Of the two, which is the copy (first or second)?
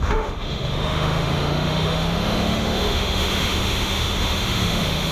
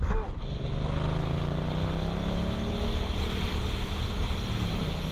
first